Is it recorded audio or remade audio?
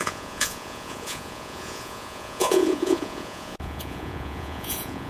remade